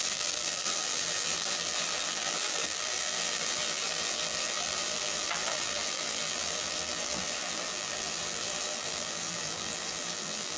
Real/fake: fake